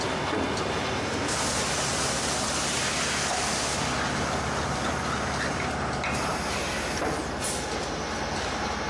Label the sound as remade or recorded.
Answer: recorded